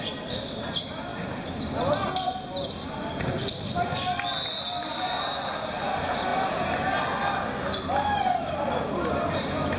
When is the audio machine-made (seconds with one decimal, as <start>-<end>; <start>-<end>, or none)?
0.0-1.1; 4.6-6.3; 8.2-9.8